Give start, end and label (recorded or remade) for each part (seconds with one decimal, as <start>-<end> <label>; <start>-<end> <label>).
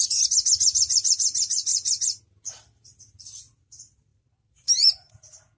0.0-4.1 recorded; 4.1-5.1 remade; 5.1-5.6 recorded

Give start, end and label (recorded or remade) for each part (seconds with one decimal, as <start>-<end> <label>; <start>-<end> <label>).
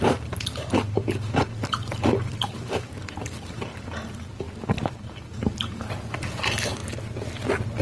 0.0-6.8 remade; 6.8-7.8 recorded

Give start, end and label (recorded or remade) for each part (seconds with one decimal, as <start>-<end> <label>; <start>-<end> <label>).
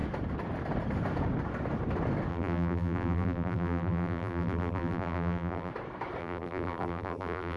0.0-2.3 recorded; 2.3-5.7 remade; 5.7-6.2 recorded; 6.2-7.6 remade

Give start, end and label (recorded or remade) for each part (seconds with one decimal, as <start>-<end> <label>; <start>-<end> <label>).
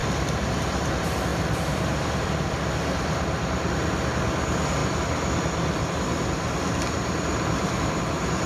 0.0-1.3 recorded; 1.3-3.7 remade; 3.7-4.8 recorded; 4.8-8.0 remade; 8.0-8.5 recorded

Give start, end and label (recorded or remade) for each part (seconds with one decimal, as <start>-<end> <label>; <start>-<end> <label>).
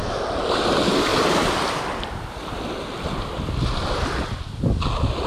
0.0-5.3 recorded